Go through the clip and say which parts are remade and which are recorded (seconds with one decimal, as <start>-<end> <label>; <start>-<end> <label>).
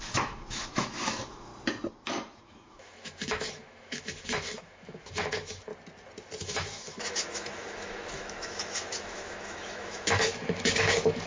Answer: 0.0-1.5 remade; 1.5-2.4 recorded; 2.4-5.7 remade; 5.7-6.4 recorded; 6.4-11.3 remade